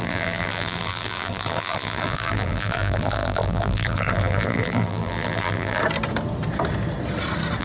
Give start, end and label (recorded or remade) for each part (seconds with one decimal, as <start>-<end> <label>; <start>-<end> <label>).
0.0-5.8 remade; 5.8-7.6 recorded